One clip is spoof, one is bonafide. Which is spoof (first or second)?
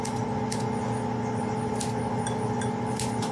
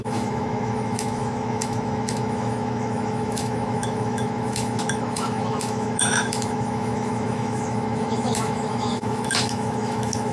second